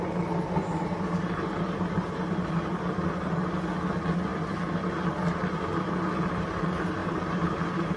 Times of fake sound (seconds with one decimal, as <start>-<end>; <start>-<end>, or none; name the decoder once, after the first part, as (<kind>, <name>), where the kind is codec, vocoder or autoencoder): 0.6-2.5 (vocoder, BigVGAN v2); 7.0-8.0